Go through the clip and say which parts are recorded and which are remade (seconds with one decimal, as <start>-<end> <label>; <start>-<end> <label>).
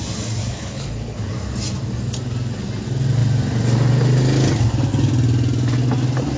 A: 0.0-0.4 recorded; 0.4-1.3 remade; 1.3-6.4 recorded